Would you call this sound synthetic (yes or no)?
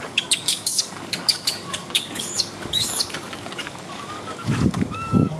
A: yes